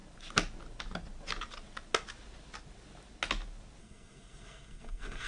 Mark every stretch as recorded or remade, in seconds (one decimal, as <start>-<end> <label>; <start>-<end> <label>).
0.0-3.8 recorded; 3.8-5.3 remade